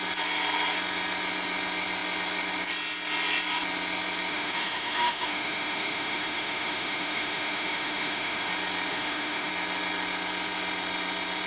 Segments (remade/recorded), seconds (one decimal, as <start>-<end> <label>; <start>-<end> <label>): 0.0-4.3 recorded; 4.3-8.5 remade; 8.5-8.9 recorded; 8.9-9.5 remade; 9.5-11.5 recorded